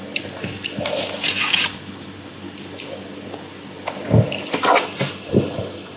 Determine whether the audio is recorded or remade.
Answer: recorded